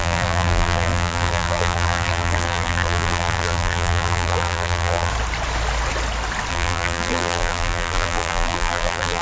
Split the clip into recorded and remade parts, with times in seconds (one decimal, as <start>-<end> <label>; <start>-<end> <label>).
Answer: 0.0-5.1 remade; 5.1-6.5 recorded; 6.5-9.2 remade